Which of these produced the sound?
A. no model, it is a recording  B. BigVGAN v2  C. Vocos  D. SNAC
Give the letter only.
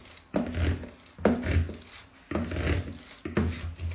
A